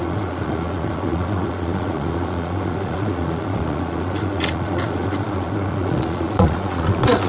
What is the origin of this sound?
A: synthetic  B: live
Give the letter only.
A